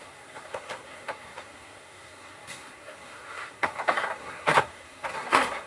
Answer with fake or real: fake